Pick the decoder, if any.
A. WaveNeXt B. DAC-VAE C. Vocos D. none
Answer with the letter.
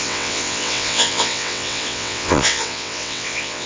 A